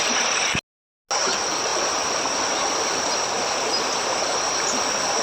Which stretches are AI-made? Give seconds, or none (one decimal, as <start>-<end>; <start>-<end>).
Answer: none